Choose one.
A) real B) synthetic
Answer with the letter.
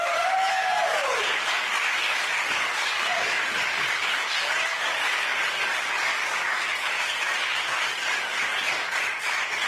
B